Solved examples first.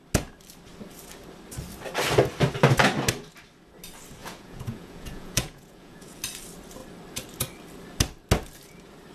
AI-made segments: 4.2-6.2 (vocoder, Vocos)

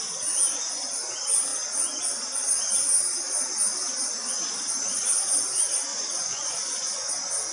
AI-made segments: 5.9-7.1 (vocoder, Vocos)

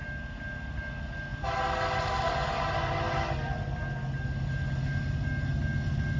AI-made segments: none

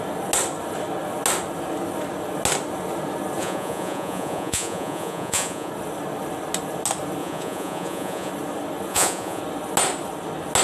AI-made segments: 3.4-5.7 (vocoder, Vocos); 7.2-8.3; 8.9-9.4

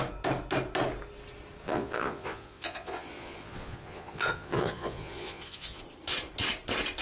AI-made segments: 1.6-5.8 (vocoder, Vocos)

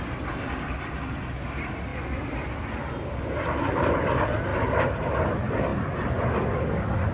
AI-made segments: none